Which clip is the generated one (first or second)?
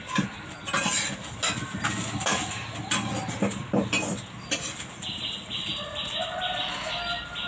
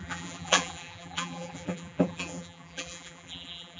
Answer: second